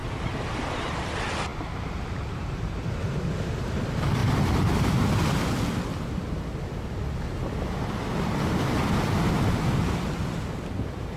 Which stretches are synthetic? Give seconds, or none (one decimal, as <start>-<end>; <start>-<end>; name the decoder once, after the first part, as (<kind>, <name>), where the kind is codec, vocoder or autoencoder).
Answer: 0.0-1.1 (vocoder, BigVGAN v2); 1.5-3.7